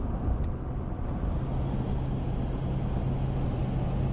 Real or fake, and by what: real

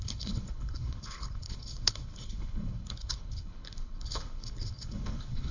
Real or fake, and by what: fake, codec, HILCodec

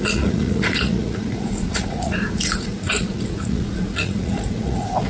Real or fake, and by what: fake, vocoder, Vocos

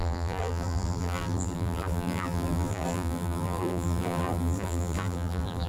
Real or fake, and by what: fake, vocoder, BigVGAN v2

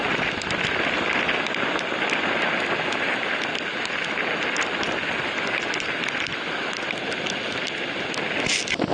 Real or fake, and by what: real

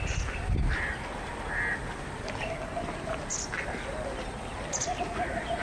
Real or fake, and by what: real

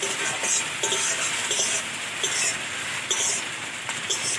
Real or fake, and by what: real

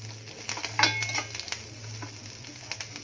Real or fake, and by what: real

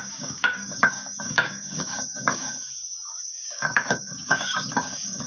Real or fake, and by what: fake, codec, DAC